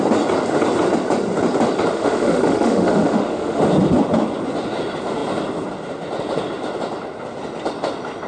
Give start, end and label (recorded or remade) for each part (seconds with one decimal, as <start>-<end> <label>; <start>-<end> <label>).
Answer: 0.0-1.9 recorded; 1.9-3.6 remade; 3.6-8.3 recorded